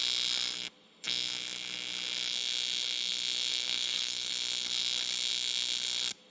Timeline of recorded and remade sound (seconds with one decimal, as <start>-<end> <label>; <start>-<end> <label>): 0.0-3.5 recorded; 3.5-4.3 remade; 4.3-6.3 recorded